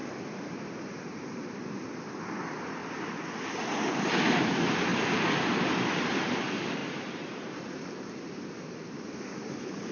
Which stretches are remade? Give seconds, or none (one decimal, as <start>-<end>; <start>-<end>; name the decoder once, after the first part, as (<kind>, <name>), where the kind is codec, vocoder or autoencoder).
1.4-2.8 (vocoder, BigVGAN v2); 3.4-4.9; 5.6-6.8; 8.1-9.9